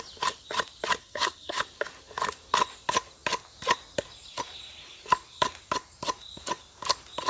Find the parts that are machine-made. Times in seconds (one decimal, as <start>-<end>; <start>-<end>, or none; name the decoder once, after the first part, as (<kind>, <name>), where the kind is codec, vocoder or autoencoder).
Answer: 1.0-1.6 (codec, SNAC)